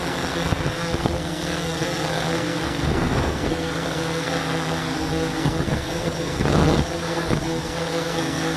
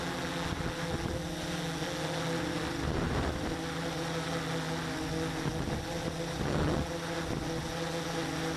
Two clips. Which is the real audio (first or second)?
second